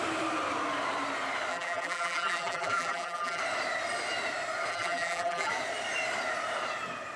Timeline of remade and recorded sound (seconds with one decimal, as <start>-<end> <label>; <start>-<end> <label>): 0.0-1.5 recorded; 1.5-3.4 remade; 3.4-4.7 recorded; 4.7-5.5 remade; 5.5-7.2 recorded